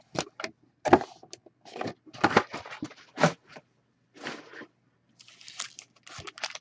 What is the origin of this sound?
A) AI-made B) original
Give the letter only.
B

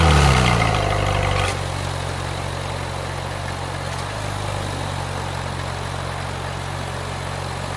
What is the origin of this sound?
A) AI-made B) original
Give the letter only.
B